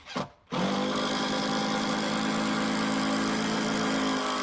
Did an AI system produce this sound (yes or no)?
no